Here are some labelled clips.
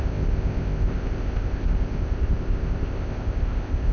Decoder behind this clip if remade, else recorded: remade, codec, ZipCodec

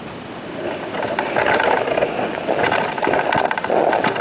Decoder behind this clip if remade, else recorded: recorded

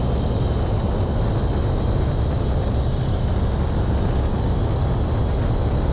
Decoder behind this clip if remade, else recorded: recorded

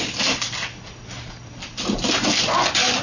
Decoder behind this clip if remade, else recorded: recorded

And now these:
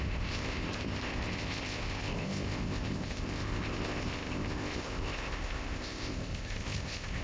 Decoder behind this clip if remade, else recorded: remade, codec, ZipCodec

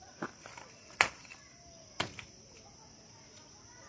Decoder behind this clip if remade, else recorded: recorded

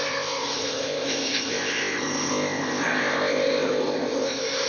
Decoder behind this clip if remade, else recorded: remade, codec, ZipCodec